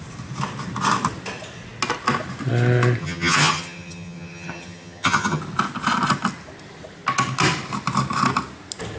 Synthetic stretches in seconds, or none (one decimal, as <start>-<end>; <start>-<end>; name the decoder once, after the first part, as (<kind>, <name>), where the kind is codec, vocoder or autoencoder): 3.0-5.4 (vocoder, HiFi-GAN)